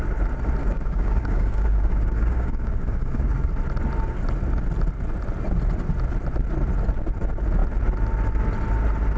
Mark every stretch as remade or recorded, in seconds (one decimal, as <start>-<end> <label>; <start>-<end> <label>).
0.0-0.6 recorded; 0.6-3.5 remade; 3.5-9.2 recorded